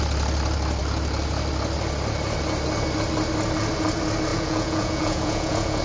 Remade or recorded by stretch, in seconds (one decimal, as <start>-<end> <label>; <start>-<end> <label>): 0.0-4.3 recorded; 4.3-5.8 remade